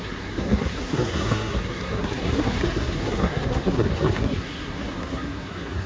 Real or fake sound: fake